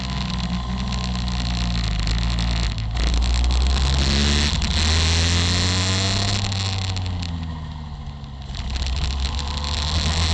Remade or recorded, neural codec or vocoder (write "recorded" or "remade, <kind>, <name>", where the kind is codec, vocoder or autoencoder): recorded